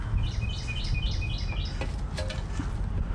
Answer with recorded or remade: recorded